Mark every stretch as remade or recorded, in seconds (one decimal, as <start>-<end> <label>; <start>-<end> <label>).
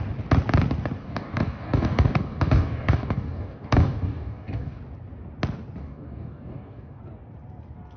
0.0-1.0 recorded; 1.0-4.8 remade; 4.8-5.8 recorded; 5.8-7.0 remade; 7.0-8.0 recorded